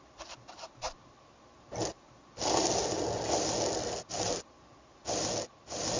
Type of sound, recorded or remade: recorded